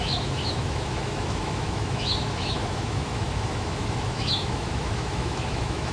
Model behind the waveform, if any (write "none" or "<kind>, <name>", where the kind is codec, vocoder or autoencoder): autoencoder, DAC-VAE